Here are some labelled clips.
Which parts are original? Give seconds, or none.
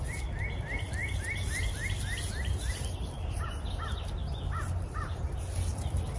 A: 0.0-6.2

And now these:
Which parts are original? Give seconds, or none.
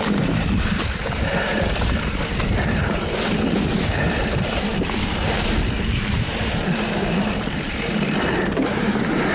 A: 4.7-5.9